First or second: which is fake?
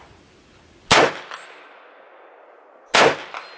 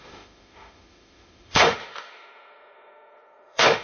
second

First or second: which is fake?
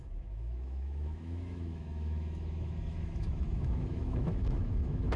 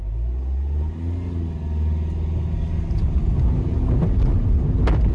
first